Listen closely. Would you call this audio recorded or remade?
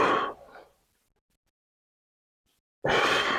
recorded